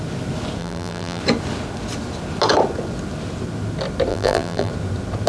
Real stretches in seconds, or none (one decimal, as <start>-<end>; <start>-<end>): 0.0-0.6; 1.2-4.1; 4.7-5.3